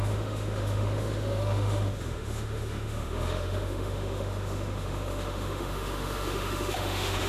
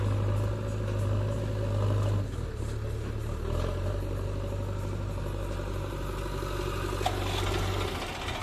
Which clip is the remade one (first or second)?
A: first